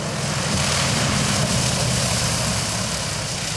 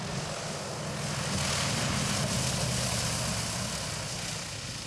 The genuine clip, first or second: second